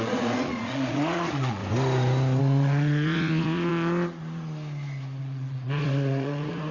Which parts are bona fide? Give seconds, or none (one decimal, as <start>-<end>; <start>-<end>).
1.6-2.4; 3.7-5.2